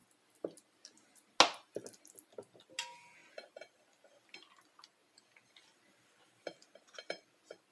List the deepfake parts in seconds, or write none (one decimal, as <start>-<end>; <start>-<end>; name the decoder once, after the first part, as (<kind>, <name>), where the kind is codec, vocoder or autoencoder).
3.2-4.3 (vocoder, BigVGAN v2); 5.0-7.7

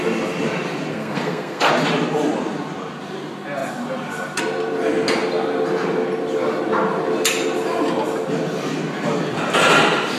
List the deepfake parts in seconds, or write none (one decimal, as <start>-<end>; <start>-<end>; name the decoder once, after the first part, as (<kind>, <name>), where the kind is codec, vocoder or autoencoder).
0.9-1.7 (codec, SNAC)

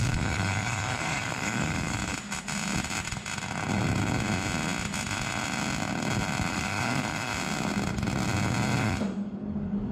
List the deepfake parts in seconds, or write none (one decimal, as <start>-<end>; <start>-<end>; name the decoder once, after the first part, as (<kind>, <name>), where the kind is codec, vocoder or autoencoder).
0.0-2.1 (codec, DAC); 6.5-7.3; 8.8-9.9

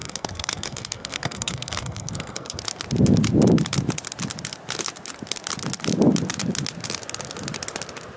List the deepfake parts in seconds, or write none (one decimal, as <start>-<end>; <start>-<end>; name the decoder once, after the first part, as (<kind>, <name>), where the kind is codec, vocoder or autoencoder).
0.0-2.6 (codec, SNAC)

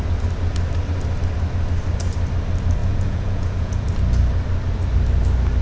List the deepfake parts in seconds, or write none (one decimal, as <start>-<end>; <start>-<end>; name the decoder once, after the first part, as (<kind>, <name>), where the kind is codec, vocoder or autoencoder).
2.8-3.9 (vocoder, Vocos)